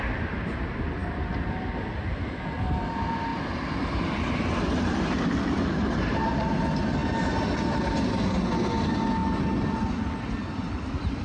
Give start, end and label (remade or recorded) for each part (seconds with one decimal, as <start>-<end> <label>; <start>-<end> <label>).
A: 0.0-3.3 recorded; 3.3-6.6 remade; 6.6-11.2 recorded